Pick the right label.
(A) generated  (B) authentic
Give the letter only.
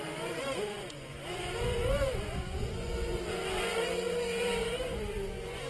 A